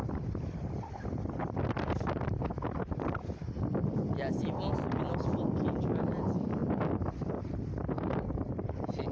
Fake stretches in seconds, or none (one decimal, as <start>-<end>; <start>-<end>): 0.0-6.6; 7.8-9.1